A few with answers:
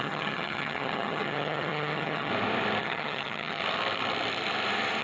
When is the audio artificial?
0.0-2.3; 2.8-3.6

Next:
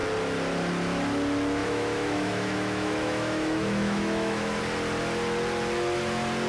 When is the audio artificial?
1.6-4.6

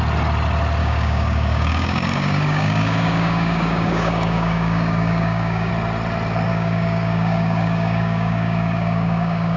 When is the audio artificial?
0.8-5.7; 6.5-9.6